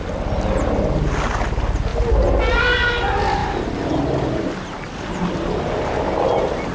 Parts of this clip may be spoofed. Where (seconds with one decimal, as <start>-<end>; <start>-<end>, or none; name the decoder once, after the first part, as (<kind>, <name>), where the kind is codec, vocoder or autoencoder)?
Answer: none